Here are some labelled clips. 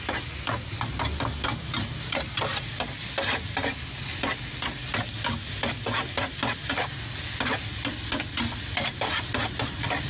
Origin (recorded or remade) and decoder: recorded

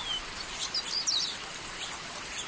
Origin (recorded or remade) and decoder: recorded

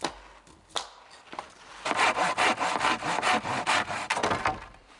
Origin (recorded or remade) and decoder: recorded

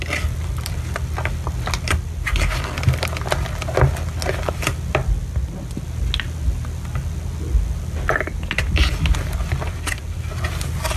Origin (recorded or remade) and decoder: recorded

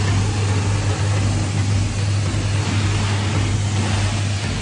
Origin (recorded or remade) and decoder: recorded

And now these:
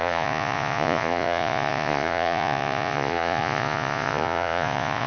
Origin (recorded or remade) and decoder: remade, vocoder, Vocos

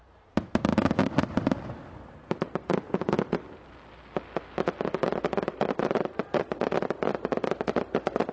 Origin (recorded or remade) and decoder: recorded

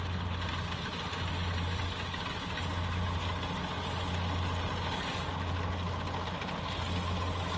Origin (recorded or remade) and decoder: recorded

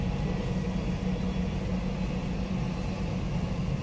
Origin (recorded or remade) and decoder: recorded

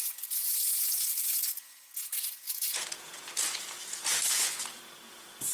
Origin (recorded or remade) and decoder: remade, vocoder, Vocos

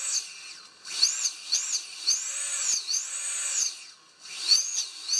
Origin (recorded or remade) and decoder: recorded